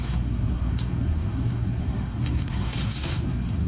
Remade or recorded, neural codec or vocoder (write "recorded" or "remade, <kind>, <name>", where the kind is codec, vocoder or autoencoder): remade, codec, SNAC